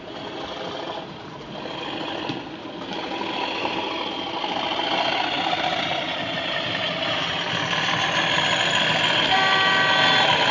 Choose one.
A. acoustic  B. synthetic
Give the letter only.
A